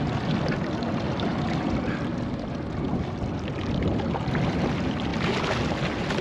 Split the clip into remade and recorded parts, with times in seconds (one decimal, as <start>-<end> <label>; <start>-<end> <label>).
0.0-6.2 recorded